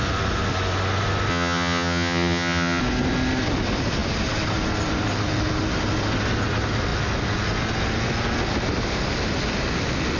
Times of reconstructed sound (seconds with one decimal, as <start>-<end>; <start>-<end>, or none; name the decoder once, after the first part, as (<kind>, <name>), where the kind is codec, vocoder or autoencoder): 1.3-2.8 (vocoder, HiFi-GAN)